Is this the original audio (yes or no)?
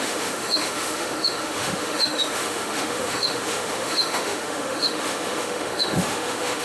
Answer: no